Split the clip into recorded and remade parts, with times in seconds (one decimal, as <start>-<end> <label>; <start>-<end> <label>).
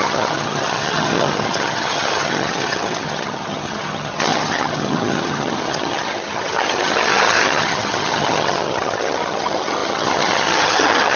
0.0-11.2 remade